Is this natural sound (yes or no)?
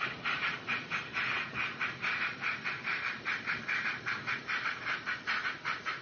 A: no